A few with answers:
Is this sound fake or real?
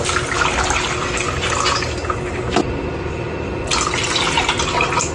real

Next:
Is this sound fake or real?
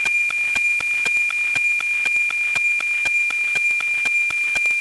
real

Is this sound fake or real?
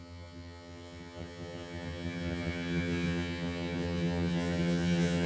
fake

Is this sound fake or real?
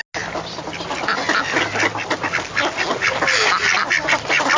real